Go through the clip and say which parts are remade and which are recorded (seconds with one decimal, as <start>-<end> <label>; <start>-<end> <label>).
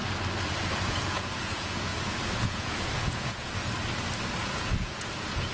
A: 0.0-0.6 recorded; 0.6-3.6 remade; 3.6-4.4 recorded; 4.4-5.5 remade